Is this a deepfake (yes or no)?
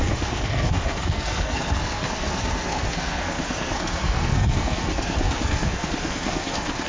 yes